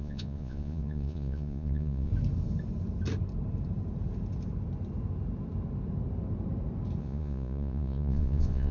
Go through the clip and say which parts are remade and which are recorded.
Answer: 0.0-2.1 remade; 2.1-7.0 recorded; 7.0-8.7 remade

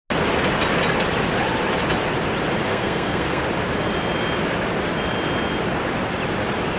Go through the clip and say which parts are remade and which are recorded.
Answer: 0.0-2.7 recorded; 2.7-3.4 remade; 3.4-6.8 recorded

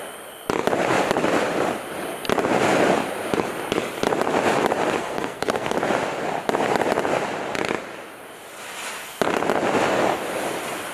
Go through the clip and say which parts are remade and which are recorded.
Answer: 0.0-5.0 recorded; 5.0-5.8 remade; 5.8-10.9 recorded